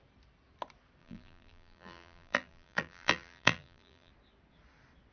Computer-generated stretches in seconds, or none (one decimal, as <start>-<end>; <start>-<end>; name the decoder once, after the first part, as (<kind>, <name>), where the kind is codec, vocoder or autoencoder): 1.0-4.1 (vocoder, BigVGAN v2)